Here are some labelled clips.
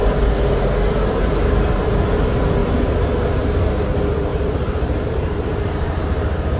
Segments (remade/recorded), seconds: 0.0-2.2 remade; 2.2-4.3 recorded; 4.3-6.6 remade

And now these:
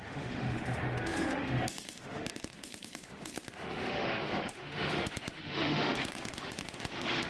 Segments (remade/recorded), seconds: 0.0-7.3 remade

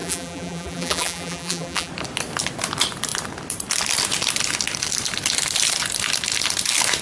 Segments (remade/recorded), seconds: 0.0-1.9 remade; 1.9-7.0 recorded

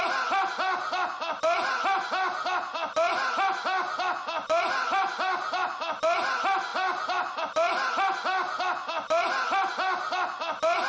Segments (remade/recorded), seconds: 0.0-4.8 recorded; 4.8-5.8 remade; 5.8-6.7 recorded; 6.7-7.4 remade; 7.4-10.9 recorded